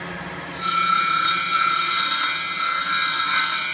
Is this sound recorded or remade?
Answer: recorded